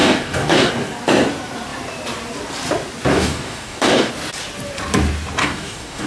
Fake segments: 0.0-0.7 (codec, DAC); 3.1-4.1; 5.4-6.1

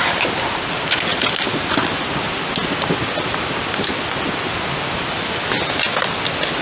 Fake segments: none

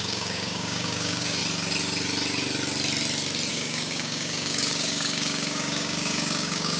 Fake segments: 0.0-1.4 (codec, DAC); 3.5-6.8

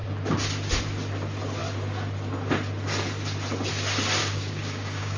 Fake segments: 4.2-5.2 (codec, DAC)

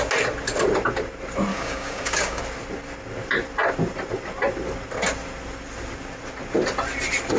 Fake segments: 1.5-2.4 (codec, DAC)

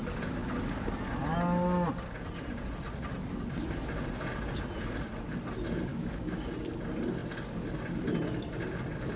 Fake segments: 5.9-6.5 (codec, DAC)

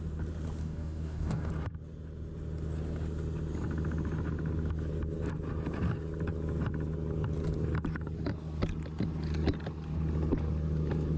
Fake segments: 0.6-1.5 (codec, DAC)

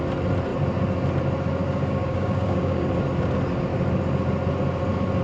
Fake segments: 1.6-2.9 (codec, DAC)